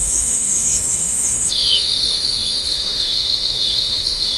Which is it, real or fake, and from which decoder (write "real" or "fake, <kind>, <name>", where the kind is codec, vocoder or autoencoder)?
fake, autoencoder, DAC-VAE